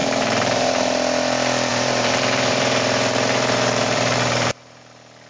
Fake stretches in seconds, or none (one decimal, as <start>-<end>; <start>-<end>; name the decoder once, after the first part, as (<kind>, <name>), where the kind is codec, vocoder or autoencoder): 0.0-0.7 (vocoder, BigVGAN v2); 1.7-4.8